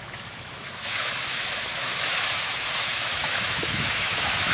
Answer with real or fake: fake